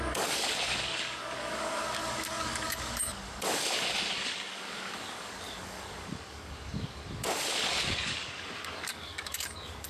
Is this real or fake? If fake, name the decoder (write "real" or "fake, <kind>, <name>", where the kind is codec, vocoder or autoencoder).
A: fake, codec, DAC